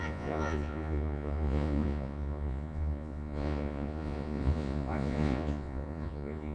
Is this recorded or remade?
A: remade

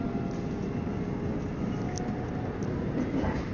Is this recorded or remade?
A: recorded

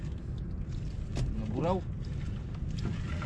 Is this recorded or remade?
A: recorded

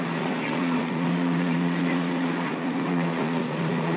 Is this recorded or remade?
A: remade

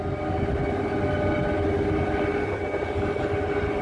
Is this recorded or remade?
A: recorded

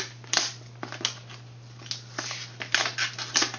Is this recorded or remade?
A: recorded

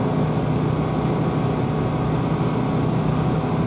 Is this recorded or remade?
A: recorded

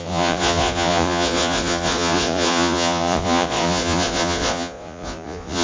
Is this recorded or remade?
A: remade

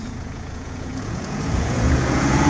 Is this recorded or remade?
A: remade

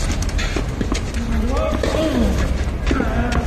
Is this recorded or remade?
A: recorded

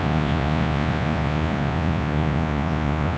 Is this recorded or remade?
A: remade